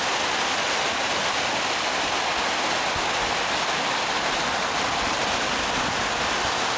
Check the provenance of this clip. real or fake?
real